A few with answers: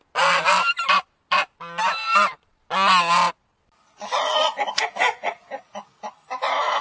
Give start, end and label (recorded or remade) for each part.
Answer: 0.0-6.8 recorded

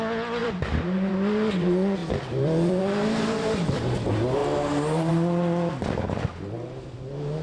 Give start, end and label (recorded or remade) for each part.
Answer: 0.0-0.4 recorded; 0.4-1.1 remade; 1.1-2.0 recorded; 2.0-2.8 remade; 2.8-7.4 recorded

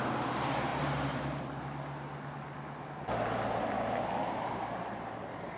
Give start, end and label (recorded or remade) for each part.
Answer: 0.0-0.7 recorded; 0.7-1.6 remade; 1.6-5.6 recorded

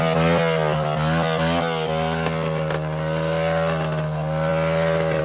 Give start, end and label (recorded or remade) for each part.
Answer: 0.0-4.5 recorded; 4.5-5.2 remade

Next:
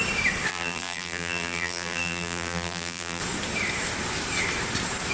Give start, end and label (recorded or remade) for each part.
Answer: 0.0-0.5 recorded; 0.5-3.2 remade; 3.2-5.1 recorded

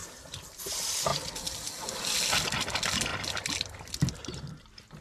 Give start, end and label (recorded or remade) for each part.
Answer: 0.0-5.0 recorded

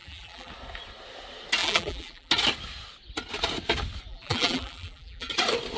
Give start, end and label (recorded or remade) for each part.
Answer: 0.0-0.5 remade; 0.5-1.6 recorded; 1.6-2.3 remade; 2.3-4.1 recorded; 4.1-5.3 remade; 5.3-5.8 recorded

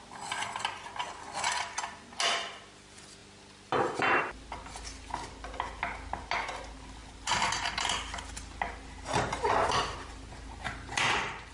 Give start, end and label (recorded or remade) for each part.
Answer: 0.0-9.1 recorded; 9.1-9.7 remade; 9.7-11.5 recorded